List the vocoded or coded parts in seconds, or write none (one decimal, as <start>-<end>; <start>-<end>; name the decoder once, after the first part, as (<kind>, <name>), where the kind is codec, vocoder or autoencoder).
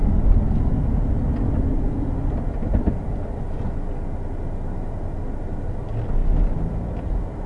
none